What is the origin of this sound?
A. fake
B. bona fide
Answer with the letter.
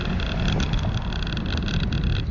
B